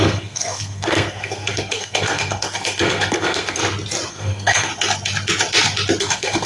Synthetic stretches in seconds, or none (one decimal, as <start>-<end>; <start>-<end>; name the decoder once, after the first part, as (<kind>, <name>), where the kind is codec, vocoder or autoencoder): 0.0-3.6 (codec, SNAC); 4.1-4.7; 6.0-6.5